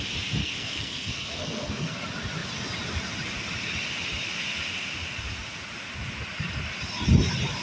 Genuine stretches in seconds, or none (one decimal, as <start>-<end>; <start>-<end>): 0.0-0.4; 2.0-7.6